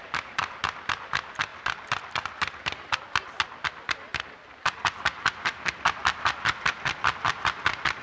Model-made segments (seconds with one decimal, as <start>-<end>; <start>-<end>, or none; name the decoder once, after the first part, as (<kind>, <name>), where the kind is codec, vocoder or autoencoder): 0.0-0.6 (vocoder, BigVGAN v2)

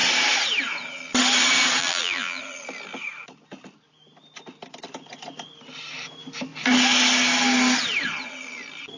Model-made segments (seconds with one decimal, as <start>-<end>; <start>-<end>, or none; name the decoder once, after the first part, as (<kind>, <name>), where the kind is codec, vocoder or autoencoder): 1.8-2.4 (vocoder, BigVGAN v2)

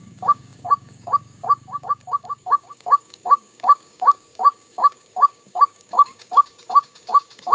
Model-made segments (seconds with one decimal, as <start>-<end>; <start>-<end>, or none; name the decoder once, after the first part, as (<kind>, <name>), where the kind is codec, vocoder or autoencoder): 0.0-7.5 (codec, DAC)

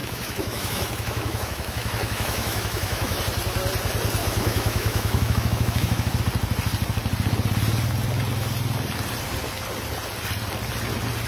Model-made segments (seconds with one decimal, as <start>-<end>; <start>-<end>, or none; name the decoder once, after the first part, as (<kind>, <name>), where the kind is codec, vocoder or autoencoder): 0.0-3.2 (autoencoder, DAC-VAE); 4.2-6.2

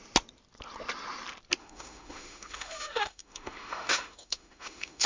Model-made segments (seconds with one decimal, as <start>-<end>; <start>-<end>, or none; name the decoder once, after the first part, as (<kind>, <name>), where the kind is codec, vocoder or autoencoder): 1.6-5.1 (autoencoder, DAC-VAE)

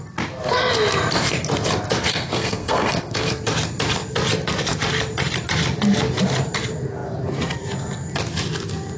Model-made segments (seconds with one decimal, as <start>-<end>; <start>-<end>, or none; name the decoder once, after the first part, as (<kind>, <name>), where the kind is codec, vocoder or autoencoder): 2.1-3.3 (codec, SNAC)

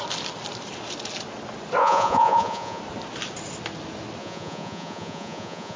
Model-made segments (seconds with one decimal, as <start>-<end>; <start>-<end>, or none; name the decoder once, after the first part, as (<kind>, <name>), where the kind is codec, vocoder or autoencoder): 1.8-2.8 (vocoder, Vocos); 4.2-5.8

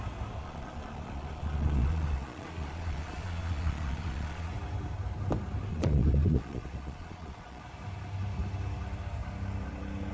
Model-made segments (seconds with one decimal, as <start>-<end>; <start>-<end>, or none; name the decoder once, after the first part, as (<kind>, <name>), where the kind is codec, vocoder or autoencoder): 0.4-4.5 (vocoder, Vocos); 5.7-7.6